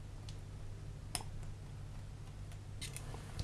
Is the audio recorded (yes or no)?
yes